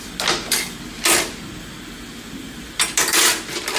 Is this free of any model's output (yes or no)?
yes